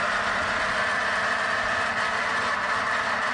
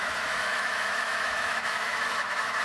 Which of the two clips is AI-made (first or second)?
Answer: second